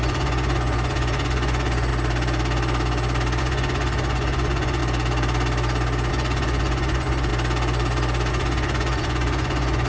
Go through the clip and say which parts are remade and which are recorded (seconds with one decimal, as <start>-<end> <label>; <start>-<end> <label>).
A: 0.0-1.9 remade; 1.9-3.4 recorded; 3.4-4.8 remade; 4.8-6.1 recorded; 6.1-7.3 remade; 7.3-8.3 recorded; 8.3-9.9 remade